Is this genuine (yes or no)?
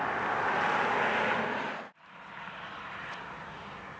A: yes